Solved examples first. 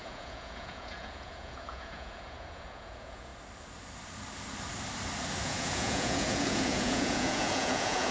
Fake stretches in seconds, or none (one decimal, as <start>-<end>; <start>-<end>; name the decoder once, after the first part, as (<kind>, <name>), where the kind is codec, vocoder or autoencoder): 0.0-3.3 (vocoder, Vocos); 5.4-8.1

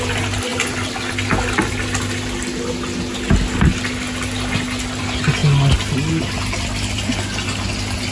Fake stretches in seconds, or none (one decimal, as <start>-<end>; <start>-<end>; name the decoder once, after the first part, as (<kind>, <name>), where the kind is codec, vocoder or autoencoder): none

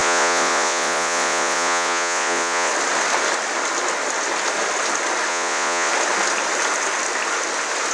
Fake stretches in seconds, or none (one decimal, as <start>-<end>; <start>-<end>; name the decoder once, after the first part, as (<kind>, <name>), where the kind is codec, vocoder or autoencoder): 0.0-2.7 (vocoder, Vocos); 5.3-5.9

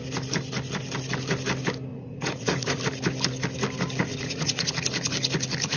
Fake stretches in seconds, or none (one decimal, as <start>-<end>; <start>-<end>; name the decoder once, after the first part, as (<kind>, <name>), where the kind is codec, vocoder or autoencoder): 1.9-2.8 (vocoder, Vocos); 4.1-4.7

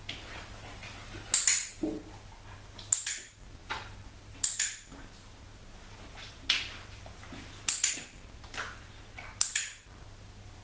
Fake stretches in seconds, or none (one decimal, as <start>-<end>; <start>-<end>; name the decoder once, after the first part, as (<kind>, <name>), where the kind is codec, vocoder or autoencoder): none

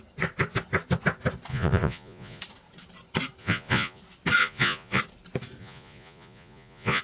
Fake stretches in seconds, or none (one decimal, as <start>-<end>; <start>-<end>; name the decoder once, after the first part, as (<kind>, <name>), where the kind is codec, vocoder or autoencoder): 1.5-2.4 (vocoder, Vocos); 3.4-4.0; 4.4-5.0; 5.6-7.0